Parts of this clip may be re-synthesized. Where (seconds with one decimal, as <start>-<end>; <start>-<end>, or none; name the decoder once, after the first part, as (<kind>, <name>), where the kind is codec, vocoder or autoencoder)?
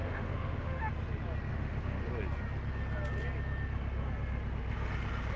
0.0-0.8 (autoencoder, DAC-VAE); 1.5-2.1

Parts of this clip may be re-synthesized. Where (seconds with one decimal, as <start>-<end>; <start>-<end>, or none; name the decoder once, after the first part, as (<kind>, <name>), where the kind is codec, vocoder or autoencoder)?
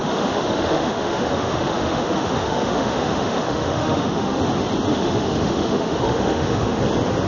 0.0-4.4 (autoencoder, DAC-VAE); 4.9-6.8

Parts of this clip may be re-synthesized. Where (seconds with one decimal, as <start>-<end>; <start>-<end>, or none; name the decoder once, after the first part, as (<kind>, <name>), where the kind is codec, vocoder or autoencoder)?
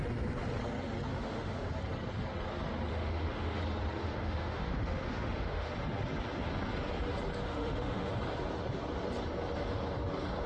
1.1-1.7 (autoencoder, DAC-VAE); 2.9-3.6; 4.0-5.7; 7.4-8.1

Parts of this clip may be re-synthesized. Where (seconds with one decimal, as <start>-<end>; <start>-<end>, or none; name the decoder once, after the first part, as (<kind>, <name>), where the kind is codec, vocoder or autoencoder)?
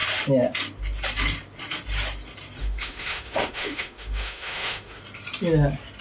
2.6-5.0 (autoencoder, DAC-VAE)